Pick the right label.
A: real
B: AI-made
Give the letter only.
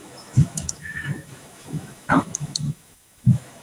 B